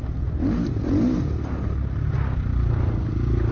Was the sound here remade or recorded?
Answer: recorded